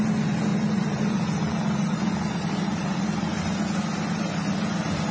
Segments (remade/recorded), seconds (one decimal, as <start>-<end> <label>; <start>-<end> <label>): 0.0-0.5 recorded; 0.5-3.6 remade; 3.6-5.1 recorded

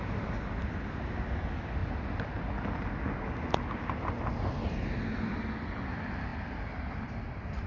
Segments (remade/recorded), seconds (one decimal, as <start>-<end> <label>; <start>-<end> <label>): 0.0-7.7 recorded

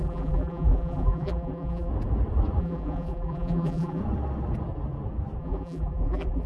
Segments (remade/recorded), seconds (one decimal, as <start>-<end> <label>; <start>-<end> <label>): 0.0-1.9 remade; 1.9-2.6 recorded; 2.6-4.0 remade; 4.0-5.4 recorded; 5.4-6.5 remade